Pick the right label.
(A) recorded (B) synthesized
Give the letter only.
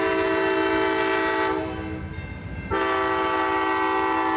A